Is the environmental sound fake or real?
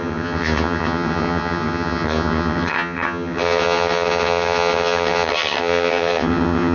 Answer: fake